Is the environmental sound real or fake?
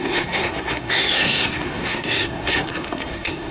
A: fake